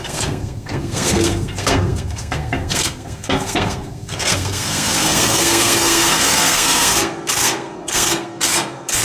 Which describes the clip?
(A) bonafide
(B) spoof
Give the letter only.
B